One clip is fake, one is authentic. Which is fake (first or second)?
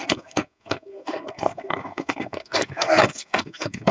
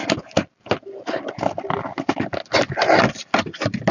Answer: first